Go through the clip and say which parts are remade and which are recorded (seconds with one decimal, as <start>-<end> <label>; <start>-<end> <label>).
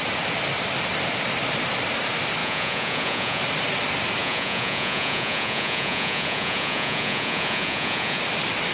0.0-2.4 recorded; 2.4-3.4 remade; 3.4-4.2 recorded; 4.2-8.2 remade; 8.2-8.7 recorded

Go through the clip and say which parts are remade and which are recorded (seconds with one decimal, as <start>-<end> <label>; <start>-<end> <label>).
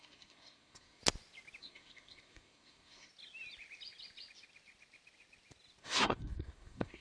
0.0-1.0 remade; 1.0-1.6 recorded; 1.6-3.1 remade; 3.1-5.8 recorded; 5.8-7.0 remade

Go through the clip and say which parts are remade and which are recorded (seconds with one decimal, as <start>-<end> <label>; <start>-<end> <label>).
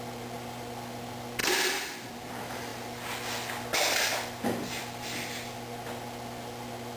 0.0-7.0 recorded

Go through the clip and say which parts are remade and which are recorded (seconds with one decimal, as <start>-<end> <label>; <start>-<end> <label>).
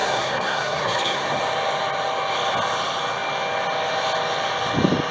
0.0-1.4 remade; 1.4-5.1 recorded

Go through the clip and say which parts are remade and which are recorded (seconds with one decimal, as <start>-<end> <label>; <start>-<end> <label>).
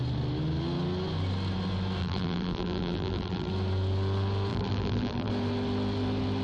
0.0-2.0 recorded; 2.0-3.5 remade; 3.5-4.5 recorded; 4.5-5.3 remade; 5.3-6.4 recorded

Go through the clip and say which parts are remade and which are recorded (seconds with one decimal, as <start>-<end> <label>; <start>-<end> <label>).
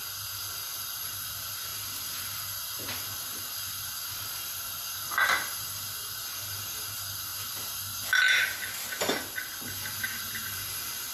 0.0-11.1 recorded